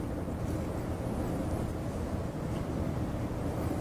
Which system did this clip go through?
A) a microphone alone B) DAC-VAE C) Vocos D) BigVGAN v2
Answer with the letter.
A